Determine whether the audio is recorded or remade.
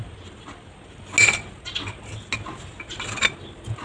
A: recorded